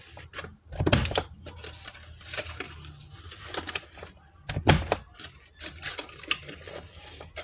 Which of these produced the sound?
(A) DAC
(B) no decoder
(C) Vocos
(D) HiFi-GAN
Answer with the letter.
B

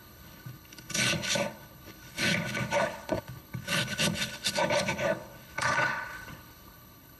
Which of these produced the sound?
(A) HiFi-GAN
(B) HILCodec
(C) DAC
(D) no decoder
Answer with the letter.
B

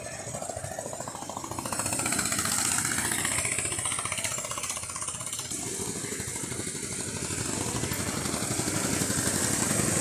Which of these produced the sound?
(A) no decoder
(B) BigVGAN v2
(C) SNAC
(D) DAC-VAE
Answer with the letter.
A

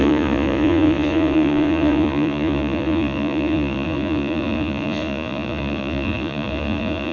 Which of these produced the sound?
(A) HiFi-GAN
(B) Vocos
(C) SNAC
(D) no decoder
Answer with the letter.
B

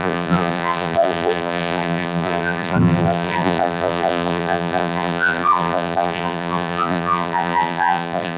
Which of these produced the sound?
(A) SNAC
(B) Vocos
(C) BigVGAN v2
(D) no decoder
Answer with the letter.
C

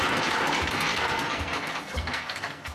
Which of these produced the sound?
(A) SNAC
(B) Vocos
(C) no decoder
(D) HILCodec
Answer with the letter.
A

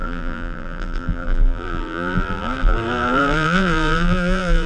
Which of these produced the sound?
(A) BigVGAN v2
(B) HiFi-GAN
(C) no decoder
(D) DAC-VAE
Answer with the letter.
A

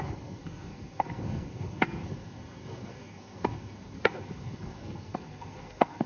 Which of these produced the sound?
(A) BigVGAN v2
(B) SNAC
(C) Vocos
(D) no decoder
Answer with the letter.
B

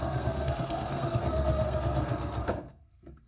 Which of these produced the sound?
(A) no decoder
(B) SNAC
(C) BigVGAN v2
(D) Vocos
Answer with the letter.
B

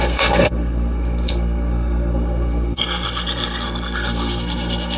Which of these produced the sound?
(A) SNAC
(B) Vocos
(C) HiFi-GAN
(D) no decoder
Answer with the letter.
A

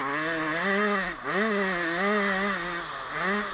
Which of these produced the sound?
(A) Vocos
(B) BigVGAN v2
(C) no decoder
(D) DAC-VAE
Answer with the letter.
C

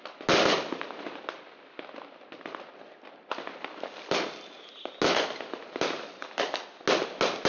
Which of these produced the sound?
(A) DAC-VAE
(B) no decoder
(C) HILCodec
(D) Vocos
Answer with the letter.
B